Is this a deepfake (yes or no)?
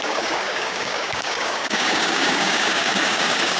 yes